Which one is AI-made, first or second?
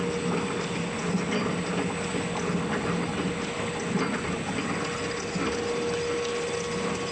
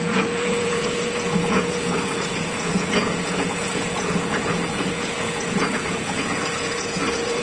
second